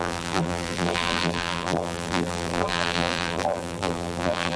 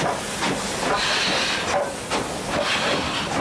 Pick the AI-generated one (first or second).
first